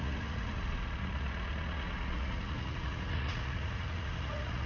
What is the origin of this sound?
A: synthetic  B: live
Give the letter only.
A